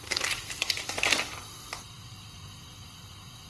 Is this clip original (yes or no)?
yes